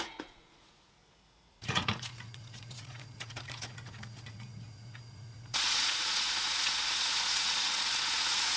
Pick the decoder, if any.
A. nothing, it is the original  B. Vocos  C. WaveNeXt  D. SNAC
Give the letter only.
B